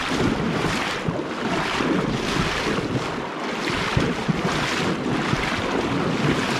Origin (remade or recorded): recorded